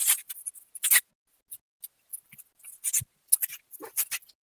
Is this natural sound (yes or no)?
yes